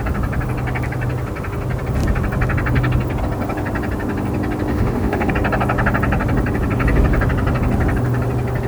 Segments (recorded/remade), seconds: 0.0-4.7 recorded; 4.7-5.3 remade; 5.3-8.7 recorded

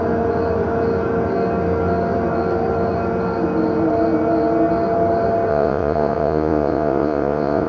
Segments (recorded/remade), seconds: 0.0-5.5 recorded; 5.5-7.7 remade